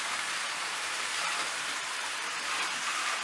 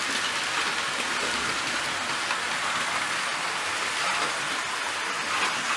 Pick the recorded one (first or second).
second